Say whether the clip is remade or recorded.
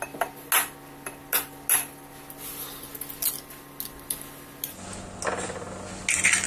recorded